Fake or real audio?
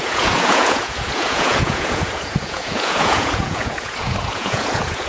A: fake